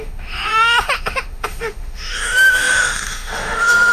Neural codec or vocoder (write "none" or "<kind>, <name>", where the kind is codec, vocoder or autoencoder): autoencoder, DAC-VAE